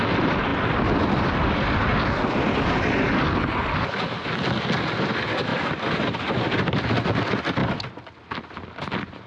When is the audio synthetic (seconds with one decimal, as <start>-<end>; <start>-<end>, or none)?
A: none